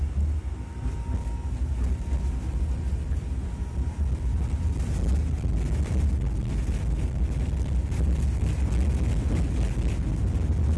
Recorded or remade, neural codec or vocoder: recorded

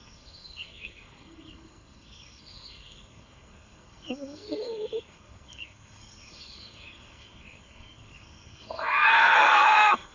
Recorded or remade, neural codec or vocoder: remade, codec, SNAC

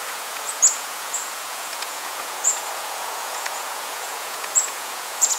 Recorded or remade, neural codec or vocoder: remade, vocoder, Vocos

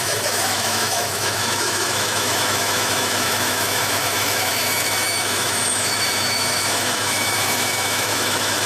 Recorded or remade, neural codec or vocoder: remade, autoencoder, DAC-VAE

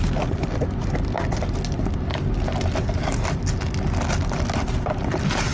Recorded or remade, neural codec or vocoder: recorded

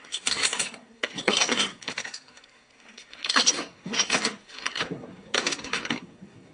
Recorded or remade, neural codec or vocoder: remade, codec, SNAC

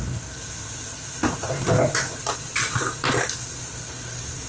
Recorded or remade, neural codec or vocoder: recorded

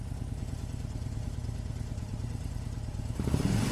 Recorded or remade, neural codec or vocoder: remade, vocoder, BigVGAN v2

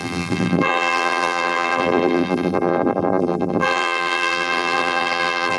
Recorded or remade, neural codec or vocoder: remade, vocoder, BigVGAN v2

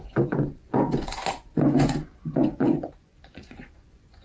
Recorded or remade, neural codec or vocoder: remade, vocoder, Vocos